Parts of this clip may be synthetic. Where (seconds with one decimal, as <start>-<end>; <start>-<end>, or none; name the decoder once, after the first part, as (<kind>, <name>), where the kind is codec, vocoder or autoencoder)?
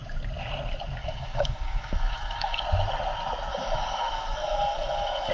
1.0-2.6 (autoencoder, DAC-VAE); 3.5-5.3